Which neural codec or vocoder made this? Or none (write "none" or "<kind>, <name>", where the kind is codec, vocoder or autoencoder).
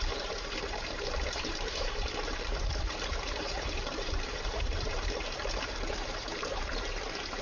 vocoder, BigVGAN v2